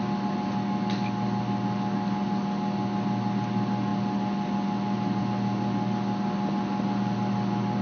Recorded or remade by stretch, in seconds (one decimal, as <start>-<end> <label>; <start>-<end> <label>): 0.0-7.8 recorded